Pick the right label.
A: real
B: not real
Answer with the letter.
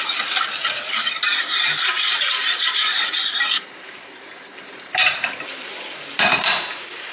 B